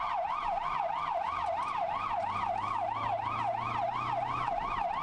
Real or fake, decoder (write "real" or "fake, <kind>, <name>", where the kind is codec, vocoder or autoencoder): real